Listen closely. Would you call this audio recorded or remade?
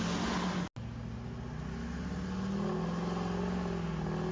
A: recorded